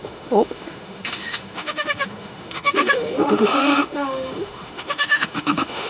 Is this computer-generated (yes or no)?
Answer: yes